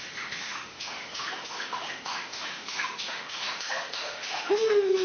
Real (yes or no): no